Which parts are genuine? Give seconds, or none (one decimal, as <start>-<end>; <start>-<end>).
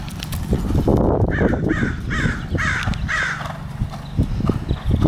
0.0-5.1